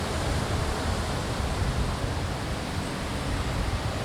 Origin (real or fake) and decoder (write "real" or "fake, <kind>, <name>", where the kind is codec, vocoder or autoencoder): fake, vocoder, BigVGAN v2